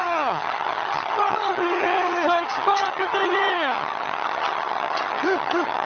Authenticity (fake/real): fake